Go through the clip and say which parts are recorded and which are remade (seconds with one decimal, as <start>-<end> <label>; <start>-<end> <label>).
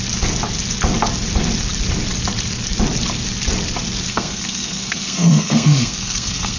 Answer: 0.0-4.1 recorded; 4.1-6.6 remade